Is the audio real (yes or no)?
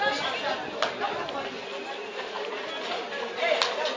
yes